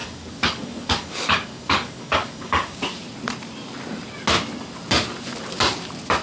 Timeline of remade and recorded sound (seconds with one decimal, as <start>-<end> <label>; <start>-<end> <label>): 0.0-2.8 remade; 2.8-6.2 recorded